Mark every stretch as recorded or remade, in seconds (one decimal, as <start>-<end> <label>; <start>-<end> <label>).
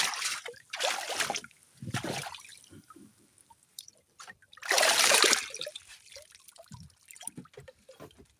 0.0-2.5 recorded; 2.5-5.2 remade; 5.2-8.4 recorded